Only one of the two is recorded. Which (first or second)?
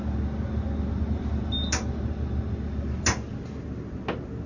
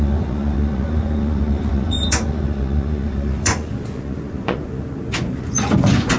first